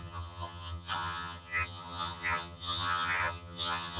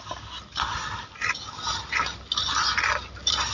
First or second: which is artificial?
first